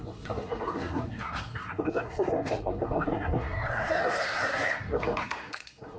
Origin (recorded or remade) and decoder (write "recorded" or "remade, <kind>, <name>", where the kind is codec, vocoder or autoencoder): remade, codec, SNAC